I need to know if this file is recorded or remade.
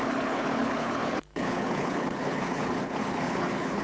remade